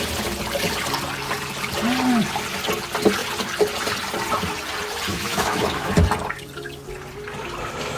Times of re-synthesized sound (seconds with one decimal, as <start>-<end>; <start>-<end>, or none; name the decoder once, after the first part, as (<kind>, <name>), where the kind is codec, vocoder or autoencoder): 5.1-5.9 (autoencoder, DAC-VAE)